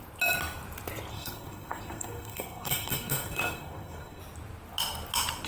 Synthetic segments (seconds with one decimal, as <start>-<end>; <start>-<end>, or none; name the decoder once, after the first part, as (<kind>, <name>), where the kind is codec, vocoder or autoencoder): 1.1-4.2 (codec, SNAC)